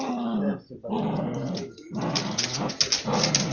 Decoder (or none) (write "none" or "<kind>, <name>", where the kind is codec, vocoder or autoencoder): none